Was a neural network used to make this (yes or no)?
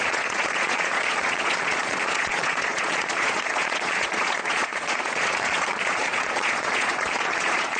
yes